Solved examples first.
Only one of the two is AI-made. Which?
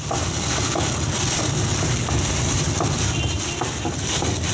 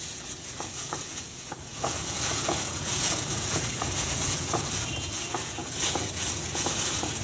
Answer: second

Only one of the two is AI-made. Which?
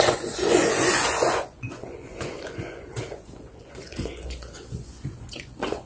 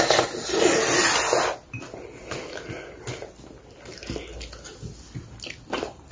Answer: first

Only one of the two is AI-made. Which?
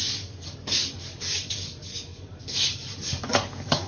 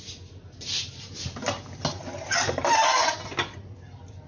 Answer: first